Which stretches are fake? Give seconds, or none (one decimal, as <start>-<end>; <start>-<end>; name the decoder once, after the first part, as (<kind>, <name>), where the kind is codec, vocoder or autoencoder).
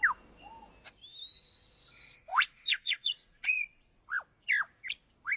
2.3-4.0 (vocoder, Vocos)